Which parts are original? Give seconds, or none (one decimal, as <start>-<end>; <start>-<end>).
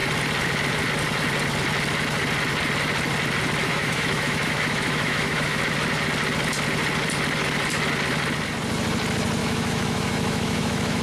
0.0-3.6; 5.6-9.4